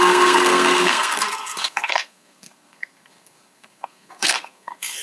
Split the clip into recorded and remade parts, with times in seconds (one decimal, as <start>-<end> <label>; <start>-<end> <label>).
0.0-5.0 remade